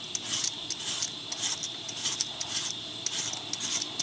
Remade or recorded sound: recorded